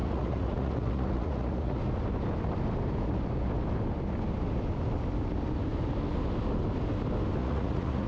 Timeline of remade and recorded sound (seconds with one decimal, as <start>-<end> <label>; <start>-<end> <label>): 0.0-1.8 remade; 1.8-7.4 recorded; 7.4-8.1 remade